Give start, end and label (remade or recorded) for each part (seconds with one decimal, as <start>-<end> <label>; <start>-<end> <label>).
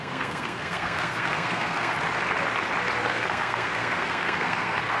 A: 0.0-1.9 remade; 1.9-3.0 recorded; 3.0-5.0 remade